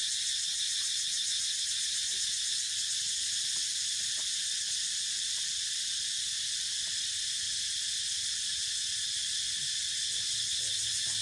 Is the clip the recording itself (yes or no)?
yes